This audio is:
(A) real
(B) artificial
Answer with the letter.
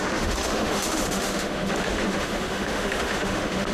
B